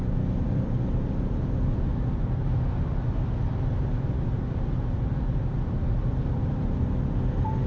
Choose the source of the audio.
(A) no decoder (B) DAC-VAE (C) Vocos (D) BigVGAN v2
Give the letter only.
D